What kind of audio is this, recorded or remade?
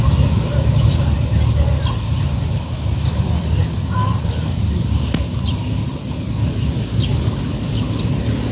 recorded